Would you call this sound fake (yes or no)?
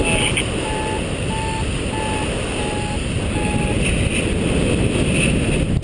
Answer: no